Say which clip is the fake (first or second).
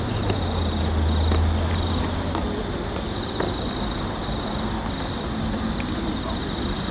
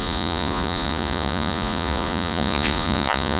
second